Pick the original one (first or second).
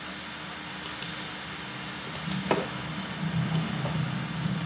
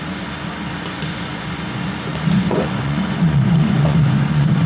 first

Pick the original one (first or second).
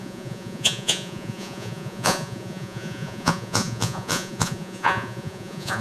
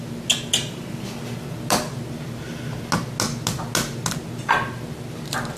second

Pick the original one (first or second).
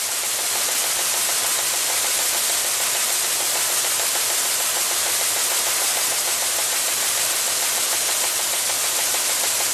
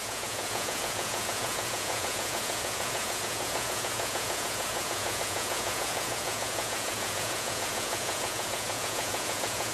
first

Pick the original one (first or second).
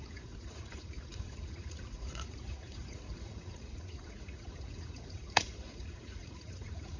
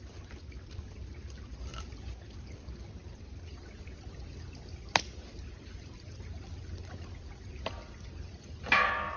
second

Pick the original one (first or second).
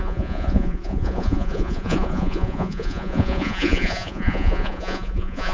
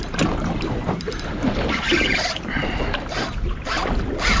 second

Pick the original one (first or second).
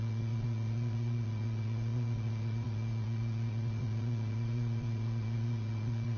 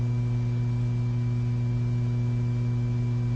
second